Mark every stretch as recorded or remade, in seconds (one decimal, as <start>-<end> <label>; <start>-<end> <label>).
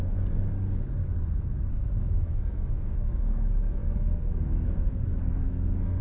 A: 0.0-0.5 remade; 0.5-1.7 recorded; 1.7-6.0 remade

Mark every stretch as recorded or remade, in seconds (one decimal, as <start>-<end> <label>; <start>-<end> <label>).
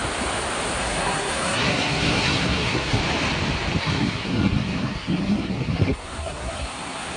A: 0.0-0.8 recorded; 0.8-3.0 remade; 3.0-3.8 recorded; 3.8-7.2 remade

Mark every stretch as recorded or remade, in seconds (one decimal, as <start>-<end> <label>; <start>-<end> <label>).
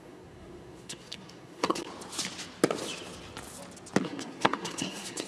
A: 0.0-1.9 remade; 1.9-4.0 recorded; 4.0-5.3 remade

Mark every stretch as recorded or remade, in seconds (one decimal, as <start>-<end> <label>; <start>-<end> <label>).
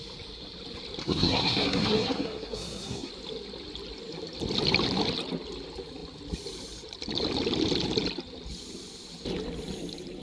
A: 0.0-1.0 recorded; 1.0-3.1 remade; 3.1-10.2 recorded